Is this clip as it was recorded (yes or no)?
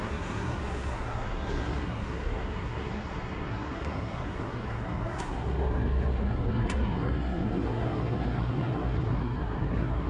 no